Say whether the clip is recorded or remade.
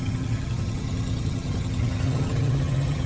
remade